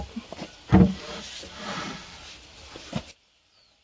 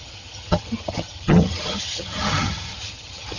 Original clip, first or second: first